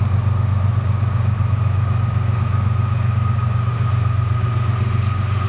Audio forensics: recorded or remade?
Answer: recorded